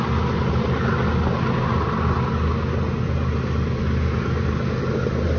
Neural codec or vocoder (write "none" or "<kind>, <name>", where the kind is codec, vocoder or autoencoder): none